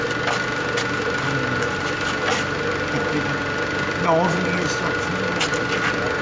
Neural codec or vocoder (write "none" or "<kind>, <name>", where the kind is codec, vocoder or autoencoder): none